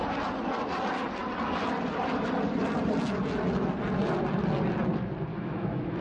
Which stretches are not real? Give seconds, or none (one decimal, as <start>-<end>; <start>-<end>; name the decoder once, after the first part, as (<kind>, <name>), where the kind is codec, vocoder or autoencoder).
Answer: 5.3-6.0 (autoencoder, DAC-VAE)